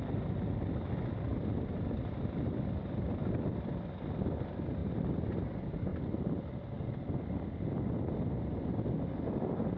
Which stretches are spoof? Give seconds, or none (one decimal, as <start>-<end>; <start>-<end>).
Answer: 1.3-3.8; 5.9-7.4